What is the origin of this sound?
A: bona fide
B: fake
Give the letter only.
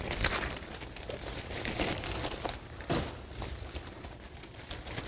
A